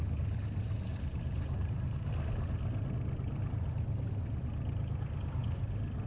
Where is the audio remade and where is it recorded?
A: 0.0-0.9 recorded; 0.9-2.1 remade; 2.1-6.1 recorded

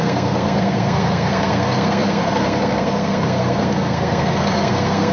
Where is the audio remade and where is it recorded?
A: 0.0-5.1 remade

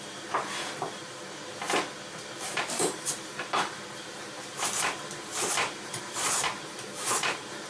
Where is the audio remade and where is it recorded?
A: 0.0-1.4 remade; 1.4-2.4 recorded; 2.4-7.7 remade

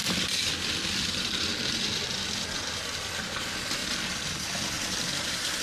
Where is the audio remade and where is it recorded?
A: 0.0-2.8 remade; 2.8-3.8 recorded; 3.8-5.6 remade

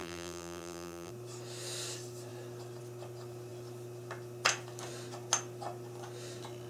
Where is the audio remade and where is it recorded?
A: 0.0-1.1 remade; 1.1-6.7 recorded

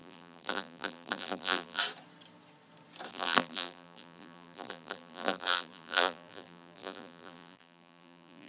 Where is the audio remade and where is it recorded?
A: 0.0-1.8 remade; 1.8-3.1 recorded; 3.1-8.5 remade

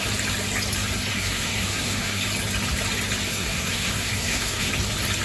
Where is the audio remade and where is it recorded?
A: 0.0-1.1 recorded; 1.1-2.2 remade; 2.2-3.3 recorded; 3.3-4.7 remade; 4.7-5.2 recorded